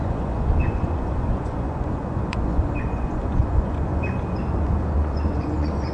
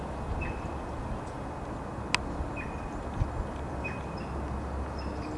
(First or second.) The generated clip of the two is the first